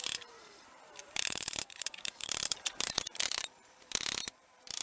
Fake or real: fake